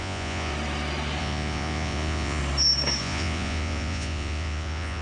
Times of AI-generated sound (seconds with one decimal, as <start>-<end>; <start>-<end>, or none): 0.0-0.5; 1.2-2.4; 3.0-5.0